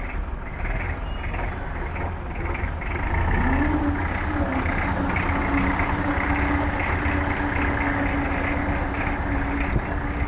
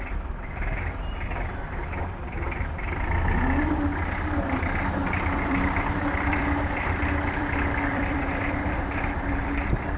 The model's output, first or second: second